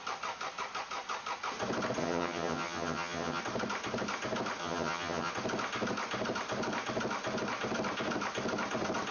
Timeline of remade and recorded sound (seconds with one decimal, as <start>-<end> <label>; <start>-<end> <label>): 0.0-2.0 recorded; 2.0-3.4 remade; 3.4-4.6 recorded; 4.6-5.3 remade; 5.3-9.1 recorded